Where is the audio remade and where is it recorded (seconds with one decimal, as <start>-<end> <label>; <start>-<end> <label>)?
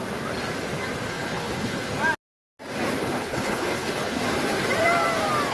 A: 0.0-1.1 recorded; 1.1-1.9 remade; 1.9-3.0 recorded; 3.0-4.2 remade; 4.2-5.5 recorded